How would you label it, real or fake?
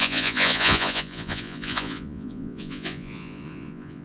fake